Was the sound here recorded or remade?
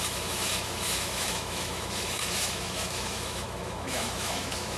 remade